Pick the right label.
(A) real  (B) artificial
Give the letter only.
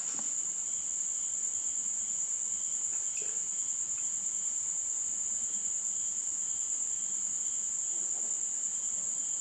A